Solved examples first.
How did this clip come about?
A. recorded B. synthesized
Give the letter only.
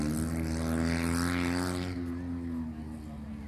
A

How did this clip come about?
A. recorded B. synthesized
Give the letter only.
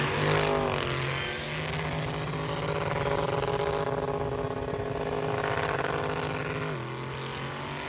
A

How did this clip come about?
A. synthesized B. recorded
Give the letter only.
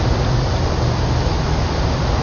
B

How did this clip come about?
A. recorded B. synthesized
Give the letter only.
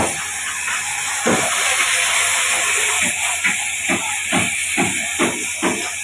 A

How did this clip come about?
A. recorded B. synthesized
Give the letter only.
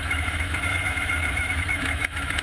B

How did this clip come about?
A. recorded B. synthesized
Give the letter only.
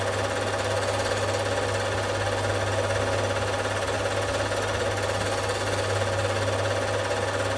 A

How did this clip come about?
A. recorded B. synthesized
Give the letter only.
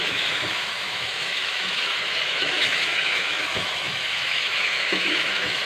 B